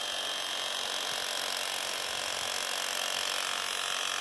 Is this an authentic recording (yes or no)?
yes